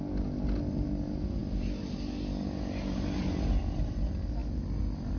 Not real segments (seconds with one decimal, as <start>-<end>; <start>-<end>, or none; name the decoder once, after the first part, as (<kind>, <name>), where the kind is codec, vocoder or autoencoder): none